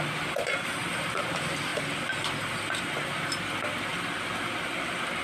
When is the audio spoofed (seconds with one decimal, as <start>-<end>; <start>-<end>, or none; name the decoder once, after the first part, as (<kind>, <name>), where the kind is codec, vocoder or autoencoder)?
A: none